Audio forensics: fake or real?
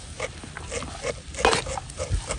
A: real